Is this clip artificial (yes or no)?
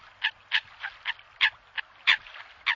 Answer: no